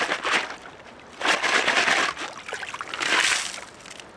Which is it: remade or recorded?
recorded